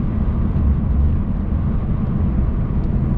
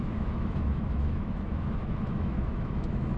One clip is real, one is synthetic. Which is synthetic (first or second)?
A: second